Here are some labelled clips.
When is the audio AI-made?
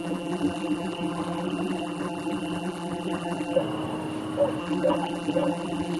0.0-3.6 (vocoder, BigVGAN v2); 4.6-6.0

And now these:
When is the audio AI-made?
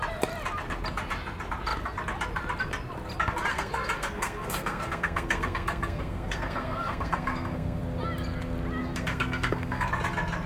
3.5-7.8 (codec, SNAC); 8.8-9.9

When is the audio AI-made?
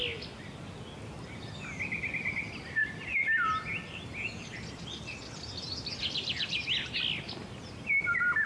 1.4-2.8 (vocoder, BigVGAN v2); 7.5-8.5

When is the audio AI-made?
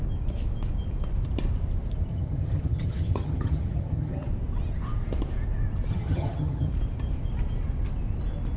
2.1-4.3 (vocoder, HiFi-GAN); 5.9-6.7